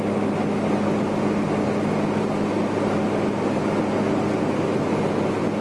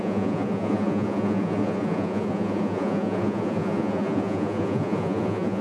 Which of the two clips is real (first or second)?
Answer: first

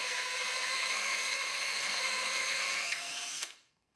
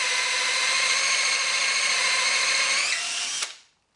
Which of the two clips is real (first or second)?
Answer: second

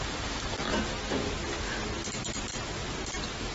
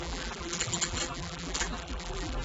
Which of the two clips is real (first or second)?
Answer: first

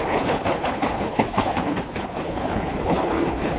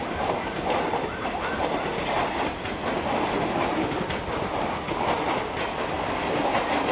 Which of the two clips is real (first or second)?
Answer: second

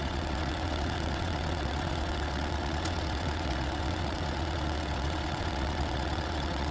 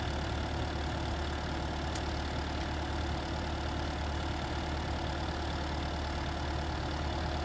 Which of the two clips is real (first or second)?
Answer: second